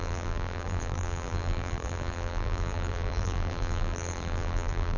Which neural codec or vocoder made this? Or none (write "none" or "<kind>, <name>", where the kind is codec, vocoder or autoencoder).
vocoder, BigVGAN v2